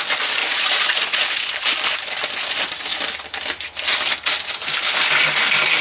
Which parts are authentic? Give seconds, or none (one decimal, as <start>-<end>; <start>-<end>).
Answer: 0.0-0.4; 1.5-5.8